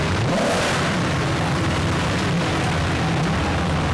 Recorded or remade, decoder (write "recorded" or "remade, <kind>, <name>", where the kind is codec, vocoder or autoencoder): remade, vocoder, BigVGAN v2